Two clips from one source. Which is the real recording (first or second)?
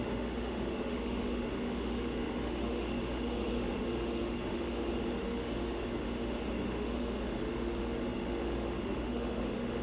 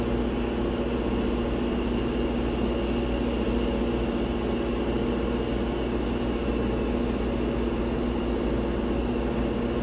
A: second